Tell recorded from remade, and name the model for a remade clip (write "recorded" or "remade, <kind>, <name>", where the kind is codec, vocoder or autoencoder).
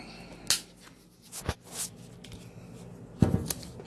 recorded